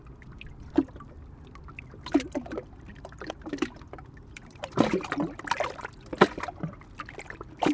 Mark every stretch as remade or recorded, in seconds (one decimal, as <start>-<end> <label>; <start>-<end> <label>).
0.0-2.9 recorded; 2.9-5.0 remade; 5.0-7.7 recorded